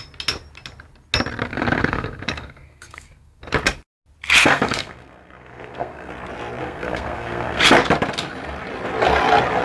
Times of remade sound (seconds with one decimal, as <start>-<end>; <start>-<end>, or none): 1.5-3.4; 4.4-6.1; 6.6-7.6